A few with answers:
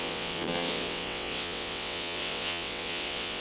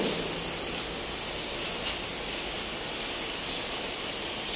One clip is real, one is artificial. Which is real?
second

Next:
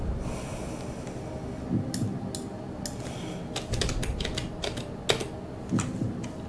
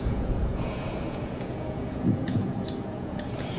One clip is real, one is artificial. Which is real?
first